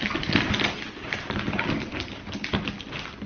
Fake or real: real